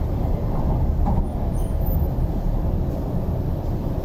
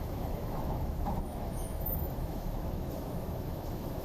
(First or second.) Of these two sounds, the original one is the first